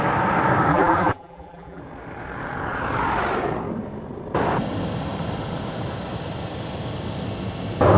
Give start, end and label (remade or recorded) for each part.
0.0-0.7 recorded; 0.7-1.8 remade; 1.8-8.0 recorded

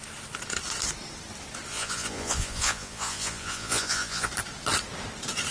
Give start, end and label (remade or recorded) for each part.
0.0-1.7 recorded; 1.7-4.3 remade; 4.3-5.5 recorded

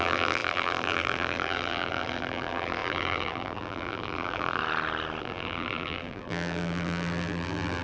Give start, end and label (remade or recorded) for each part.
0.0-4.6 remade; 4.6-5.2 recorded; 5.2-7.8 remade